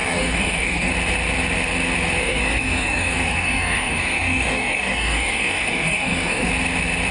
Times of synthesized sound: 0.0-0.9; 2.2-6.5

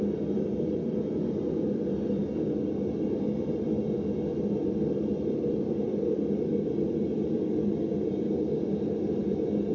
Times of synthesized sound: none

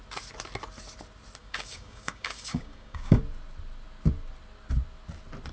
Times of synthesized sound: 1.4-3.2

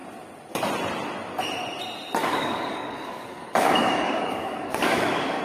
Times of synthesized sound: 2.2-5.4